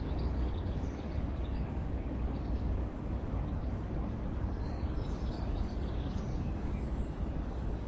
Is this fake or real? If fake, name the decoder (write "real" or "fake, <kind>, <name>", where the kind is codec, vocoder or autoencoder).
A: fake, codec, DAC